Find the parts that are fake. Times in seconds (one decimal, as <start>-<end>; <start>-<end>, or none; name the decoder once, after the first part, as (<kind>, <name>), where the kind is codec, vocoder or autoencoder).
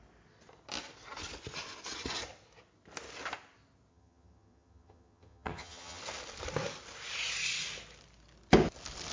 3.9-6.0 (vocoder, HiFi-GAN)